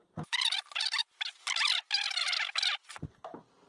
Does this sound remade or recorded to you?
recorded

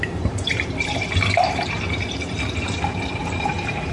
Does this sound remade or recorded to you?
remade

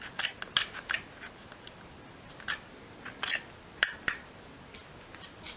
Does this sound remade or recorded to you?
recorded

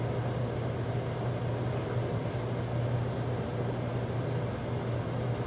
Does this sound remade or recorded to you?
recorded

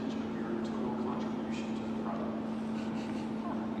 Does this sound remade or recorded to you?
recorded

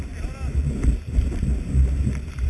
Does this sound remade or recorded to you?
remade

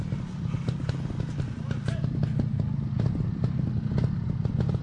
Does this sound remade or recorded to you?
recorded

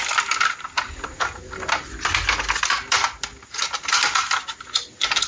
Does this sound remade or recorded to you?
recorded